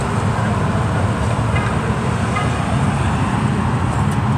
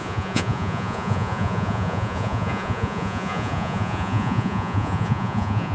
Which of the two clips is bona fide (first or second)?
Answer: first